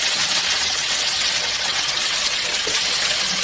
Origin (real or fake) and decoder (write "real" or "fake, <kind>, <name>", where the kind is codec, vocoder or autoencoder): fake, vocoder, WaveNeXt